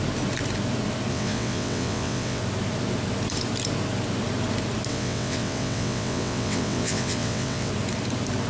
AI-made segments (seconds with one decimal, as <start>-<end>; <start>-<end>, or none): 1.1-2.4; 4.9-7.7